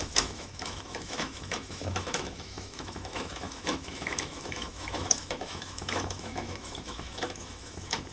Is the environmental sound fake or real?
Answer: fake